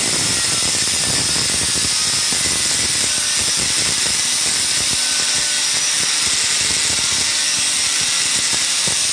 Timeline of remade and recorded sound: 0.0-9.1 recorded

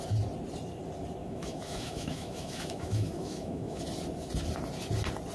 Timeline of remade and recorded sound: 0.0-1.2 recorded; 1.2-3.8 remade; 3.8-5.3 recorded